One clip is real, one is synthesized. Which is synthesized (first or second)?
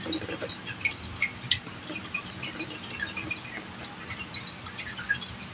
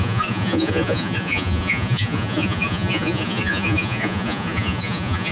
second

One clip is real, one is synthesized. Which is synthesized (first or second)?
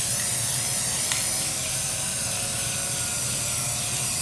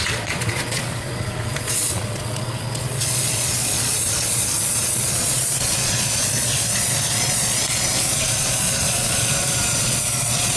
second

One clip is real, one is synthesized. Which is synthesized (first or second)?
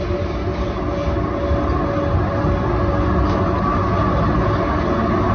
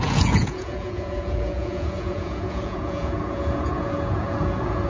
second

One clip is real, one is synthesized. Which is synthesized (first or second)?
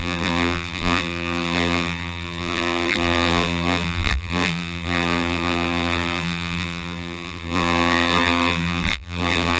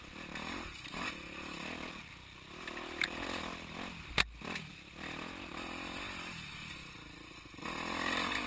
first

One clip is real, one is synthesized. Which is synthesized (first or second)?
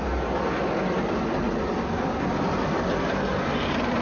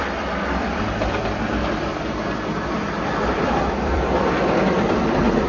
second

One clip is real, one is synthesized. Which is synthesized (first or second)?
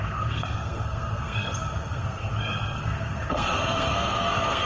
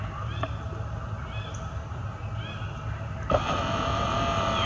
first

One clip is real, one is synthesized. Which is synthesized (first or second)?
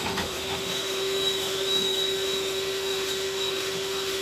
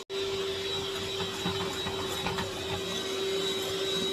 first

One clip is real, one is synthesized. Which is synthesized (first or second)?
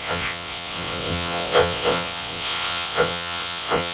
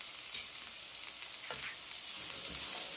first